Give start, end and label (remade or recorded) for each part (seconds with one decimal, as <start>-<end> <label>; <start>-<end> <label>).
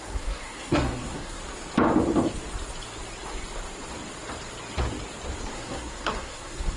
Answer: 0.0-1.4 remade; 1.4-5.5 recorded; 5.5-6.8 remade